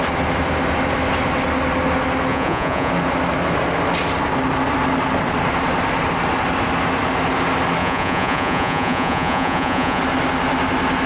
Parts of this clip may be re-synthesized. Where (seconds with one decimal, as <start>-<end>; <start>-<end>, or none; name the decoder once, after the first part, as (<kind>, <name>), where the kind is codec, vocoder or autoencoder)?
2.3-2.9 (vocoder, Vocos); 7.8-10.0